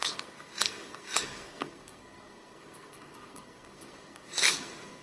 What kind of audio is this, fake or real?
fake